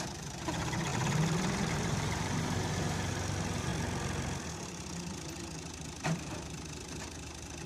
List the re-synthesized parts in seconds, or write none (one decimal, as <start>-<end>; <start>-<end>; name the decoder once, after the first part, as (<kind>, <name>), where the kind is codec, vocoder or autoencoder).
0.0-0.9 (vocoder, BigVGAN v2); 1.7-3.7; 4.6-7.7